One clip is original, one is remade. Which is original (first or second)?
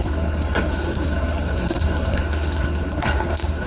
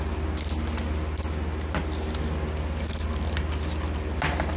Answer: second